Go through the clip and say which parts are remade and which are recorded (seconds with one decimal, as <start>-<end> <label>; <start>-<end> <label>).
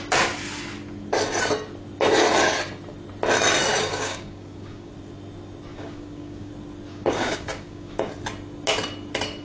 0.0-3.7 recorded; 3.7-4.9 remade; 4.9-5.7 recorded; 5.7-6.5 remade; 6.5-6.9 recorded; 6.9-8.1 remade; 8.1-9.4 recorded